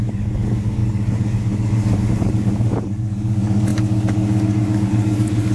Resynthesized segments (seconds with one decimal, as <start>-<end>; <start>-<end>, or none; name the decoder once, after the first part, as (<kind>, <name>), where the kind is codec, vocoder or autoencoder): 0.0-5.5 (codec, DAC)